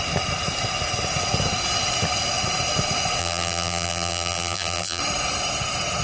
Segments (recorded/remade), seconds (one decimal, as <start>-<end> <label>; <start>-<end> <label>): 0.0-3.2 recorded; 3.2-5.0 remade; 5.0-6.0 recorded